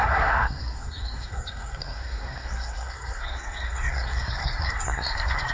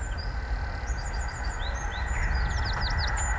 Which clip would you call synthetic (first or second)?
first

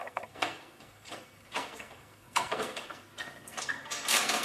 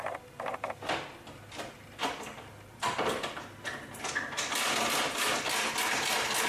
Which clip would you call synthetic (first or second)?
first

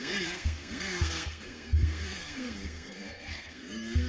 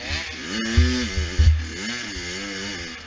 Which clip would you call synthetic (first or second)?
first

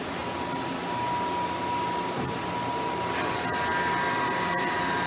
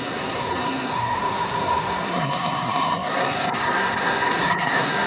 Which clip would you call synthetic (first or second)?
second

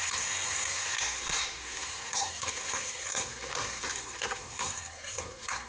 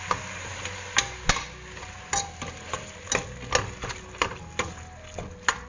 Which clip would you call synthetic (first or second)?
first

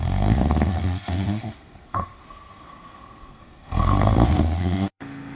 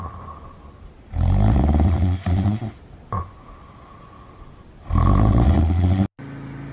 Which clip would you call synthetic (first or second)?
first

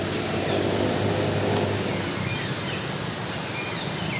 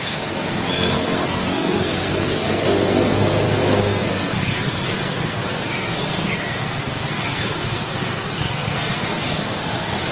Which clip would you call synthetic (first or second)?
second